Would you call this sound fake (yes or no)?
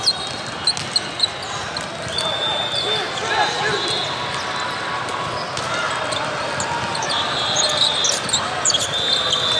no